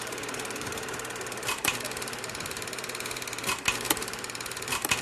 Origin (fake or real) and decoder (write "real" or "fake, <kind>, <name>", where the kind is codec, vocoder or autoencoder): fake, vocoder, BigVGAN v2